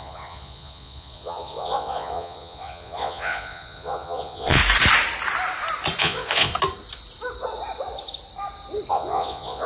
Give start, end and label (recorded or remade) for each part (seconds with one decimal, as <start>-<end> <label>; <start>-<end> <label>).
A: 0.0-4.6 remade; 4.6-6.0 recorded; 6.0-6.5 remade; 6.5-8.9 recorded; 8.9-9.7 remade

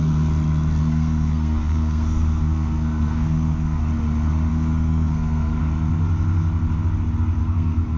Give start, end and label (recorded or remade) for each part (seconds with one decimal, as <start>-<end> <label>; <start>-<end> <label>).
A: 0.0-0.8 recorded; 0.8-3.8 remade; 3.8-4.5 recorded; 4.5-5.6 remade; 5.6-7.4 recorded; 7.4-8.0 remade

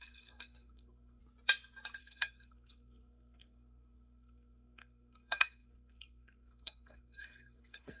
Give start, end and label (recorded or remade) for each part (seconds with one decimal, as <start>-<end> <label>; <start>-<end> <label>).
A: 0.0-1.2 remade; 1.2-2.0 recorded; 2.0-8.0 remade

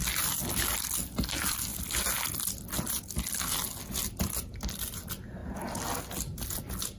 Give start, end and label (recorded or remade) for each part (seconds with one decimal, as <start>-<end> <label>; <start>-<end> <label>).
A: 0.0-7.0 recorded

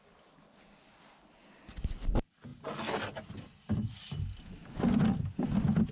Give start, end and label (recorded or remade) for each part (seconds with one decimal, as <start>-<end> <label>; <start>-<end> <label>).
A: 0.0-5.9 recorded

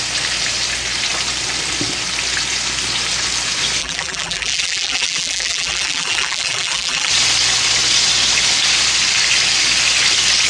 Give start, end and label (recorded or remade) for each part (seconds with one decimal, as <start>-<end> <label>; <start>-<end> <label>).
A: 0.0-3.8 recorded; 3.8-7.1 remade; 7.1-10.5 recorded

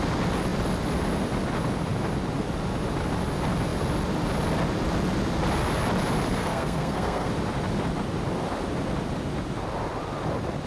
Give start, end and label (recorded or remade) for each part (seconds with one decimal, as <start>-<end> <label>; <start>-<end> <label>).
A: 0.0-6.4 recorded; 6.4-7.3 remade; 7.3-10.7 recorded

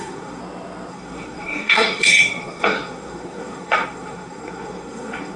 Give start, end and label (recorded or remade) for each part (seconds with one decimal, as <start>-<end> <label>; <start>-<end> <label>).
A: 0.0-0.4 remade; 0.4-0.9 recorded; 0.9-5.4 remade